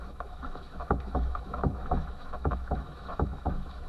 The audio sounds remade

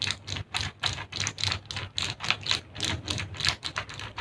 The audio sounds recorded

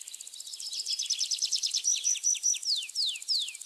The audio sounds recorded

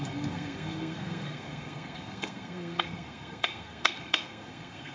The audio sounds remade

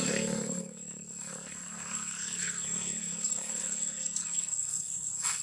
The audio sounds remade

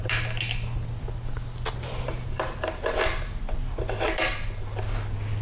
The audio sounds recorded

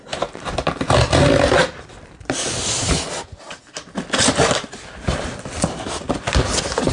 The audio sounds recorded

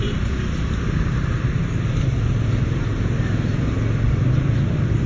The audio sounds recorded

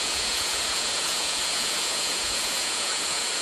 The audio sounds remade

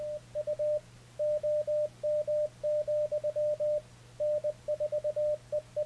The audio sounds recorded